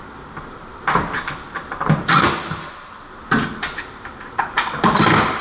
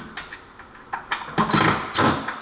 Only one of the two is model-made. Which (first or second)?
first